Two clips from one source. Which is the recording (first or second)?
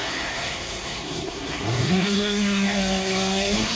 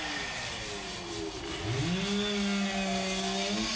second